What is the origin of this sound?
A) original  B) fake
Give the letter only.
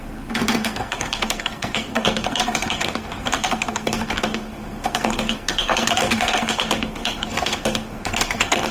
B